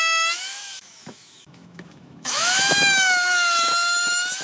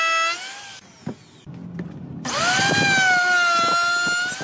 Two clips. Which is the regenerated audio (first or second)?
first